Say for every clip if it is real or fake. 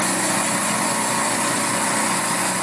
fake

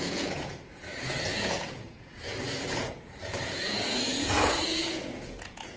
fake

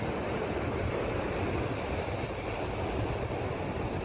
real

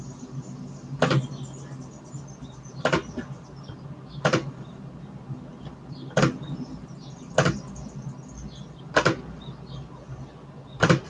real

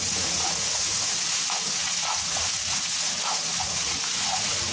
fake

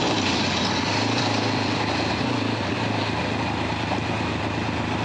real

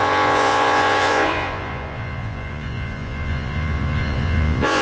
fake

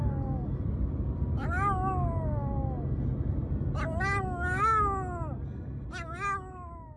real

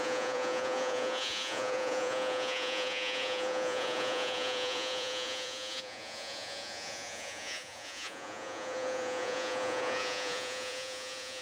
fake